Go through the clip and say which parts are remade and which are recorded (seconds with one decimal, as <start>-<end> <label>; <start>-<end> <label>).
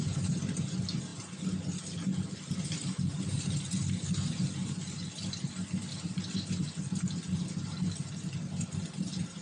0.0-9.4 recorded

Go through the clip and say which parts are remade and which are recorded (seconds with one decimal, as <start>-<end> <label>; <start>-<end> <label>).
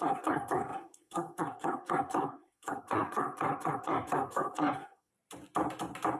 0.0-5.1 remade; 5.1-6.2 recorded